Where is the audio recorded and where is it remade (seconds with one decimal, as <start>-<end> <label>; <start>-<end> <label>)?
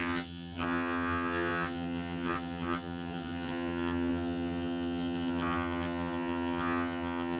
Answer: 0.0-7.4 remade